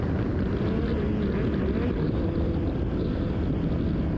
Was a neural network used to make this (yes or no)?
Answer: no